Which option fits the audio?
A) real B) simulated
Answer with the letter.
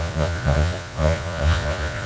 B